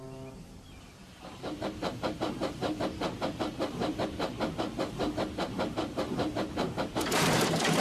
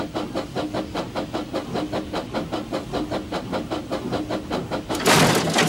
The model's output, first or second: first